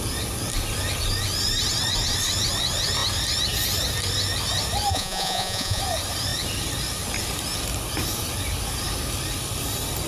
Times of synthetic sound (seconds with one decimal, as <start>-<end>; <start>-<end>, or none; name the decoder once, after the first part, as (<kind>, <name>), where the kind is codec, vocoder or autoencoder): 4.9-5.8 (vocoder, Vocos)